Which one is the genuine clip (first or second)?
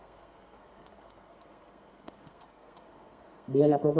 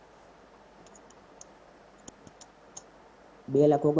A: second